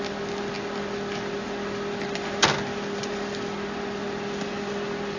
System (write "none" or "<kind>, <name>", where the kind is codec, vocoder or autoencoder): none